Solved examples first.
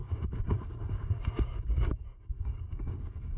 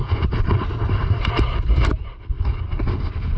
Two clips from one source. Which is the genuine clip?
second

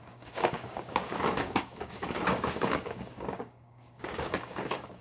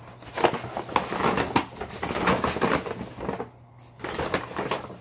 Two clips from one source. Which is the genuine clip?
second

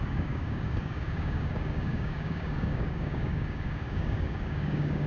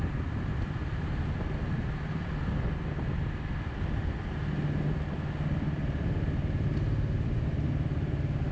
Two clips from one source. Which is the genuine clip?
second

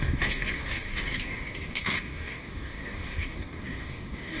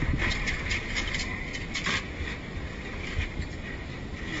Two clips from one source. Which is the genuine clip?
second